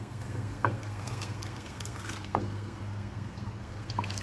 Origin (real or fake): fake